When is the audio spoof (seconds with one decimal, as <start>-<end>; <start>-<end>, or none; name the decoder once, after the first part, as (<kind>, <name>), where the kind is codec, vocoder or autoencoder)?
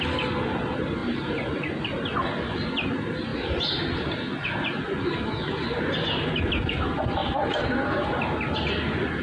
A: 1.0-1.8 (vocoder, BigVGAN v2); 3.3-4.1